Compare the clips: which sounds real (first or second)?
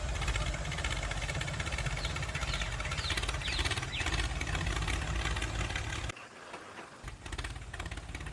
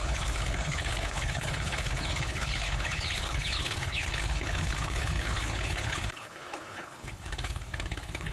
first